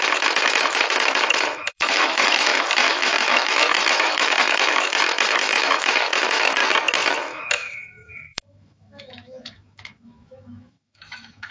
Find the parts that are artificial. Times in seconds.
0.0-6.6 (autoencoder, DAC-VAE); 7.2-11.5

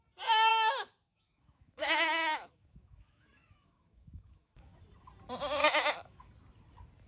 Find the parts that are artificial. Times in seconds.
0.5-4.8 (autoencoder, DAC-VAE); 5.6-6.3